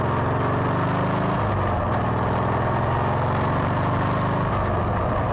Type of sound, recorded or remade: recorded